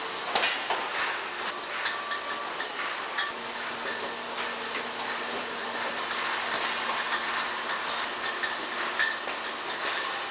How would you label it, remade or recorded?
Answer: recorded